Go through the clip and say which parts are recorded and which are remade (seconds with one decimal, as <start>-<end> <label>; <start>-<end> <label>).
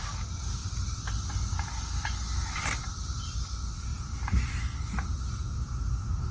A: 0.0-6.3 recorded